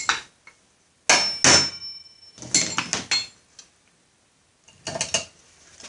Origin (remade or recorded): recorded